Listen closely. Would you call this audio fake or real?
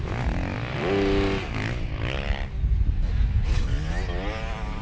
real